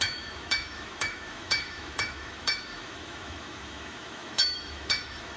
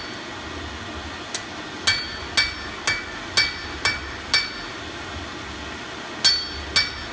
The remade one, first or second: first